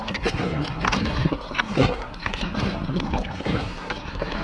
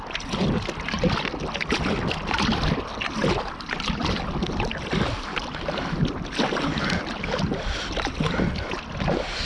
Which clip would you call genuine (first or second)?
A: second